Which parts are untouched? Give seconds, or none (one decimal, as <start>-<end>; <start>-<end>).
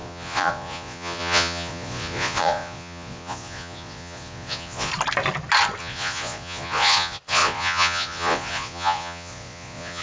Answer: 4.9-5.8